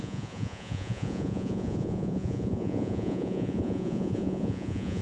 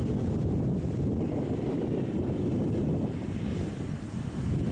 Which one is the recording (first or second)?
second